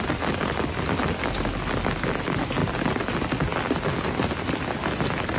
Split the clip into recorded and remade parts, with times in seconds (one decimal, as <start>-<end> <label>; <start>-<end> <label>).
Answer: 0.0-5.4 recorded